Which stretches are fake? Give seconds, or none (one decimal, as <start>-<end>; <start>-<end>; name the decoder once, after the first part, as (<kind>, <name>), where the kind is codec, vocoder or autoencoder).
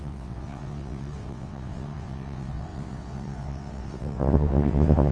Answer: 0.0-5.1 (vocoder, WaveNeXt)